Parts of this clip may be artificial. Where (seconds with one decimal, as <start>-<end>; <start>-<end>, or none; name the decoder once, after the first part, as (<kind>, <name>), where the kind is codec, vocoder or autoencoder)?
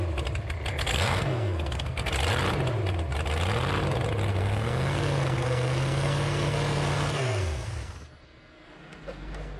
0.7-2.1 (codec, SNAC); 4.3-9.6